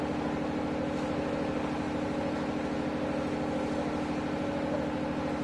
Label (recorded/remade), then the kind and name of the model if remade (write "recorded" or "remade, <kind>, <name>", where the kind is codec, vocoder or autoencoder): recorded